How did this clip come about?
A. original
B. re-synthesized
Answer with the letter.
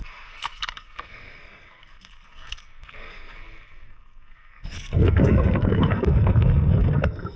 B